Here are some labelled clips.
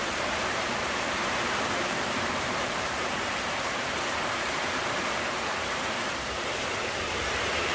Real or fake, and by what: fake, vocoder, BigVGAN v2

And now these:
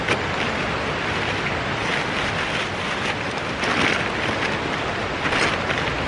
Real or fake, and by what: real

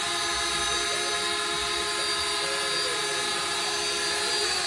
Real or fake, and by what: real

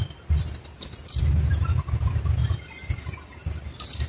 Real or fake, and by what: real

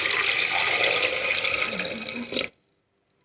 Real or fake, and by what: real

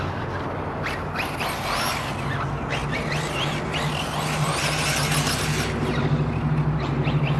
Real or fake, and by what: real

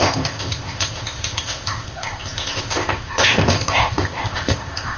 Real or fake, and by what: fake, codec, ZipCodec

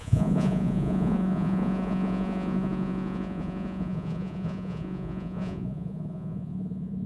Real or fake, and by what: fake, vocoder, Vocos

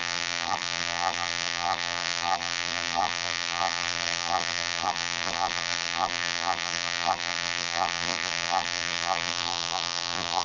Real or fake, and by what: fake, vocoder, BigVGAN v2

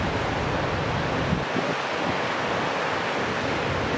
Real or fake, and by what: real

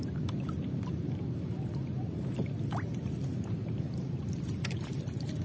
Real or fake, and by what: fake, vocoder, BigVGAN v2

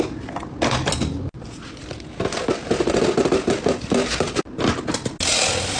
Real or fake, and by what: real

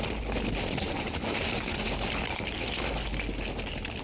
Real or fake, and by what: real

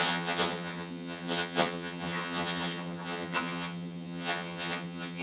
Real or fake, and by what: fake, vocoder, HiFi-GAN